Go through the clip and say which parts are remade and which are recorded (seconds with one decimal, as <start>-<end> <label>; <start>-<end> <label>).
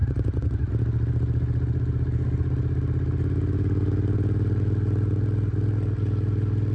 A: 0.0-0.7 remade; 0.7-6.7 recorded